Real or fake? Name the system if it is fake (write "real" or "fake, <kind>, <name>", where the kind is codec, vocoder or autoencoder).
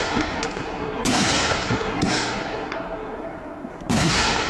fake, codec, SNAC